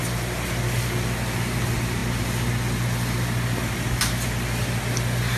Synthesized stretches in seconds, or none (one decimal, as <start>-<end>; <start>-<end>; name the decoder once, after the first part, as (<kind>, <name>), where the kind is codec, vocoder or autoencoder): none